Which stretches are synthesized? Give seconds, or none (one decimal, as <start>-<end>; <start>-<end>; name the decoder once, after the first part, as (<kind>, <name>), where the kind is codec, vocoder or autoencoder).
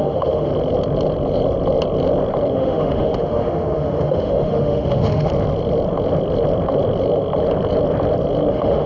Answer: 0.0-0.5 (autoencoder, DAC-VAE); 2.5-5.3; 8.5-8.9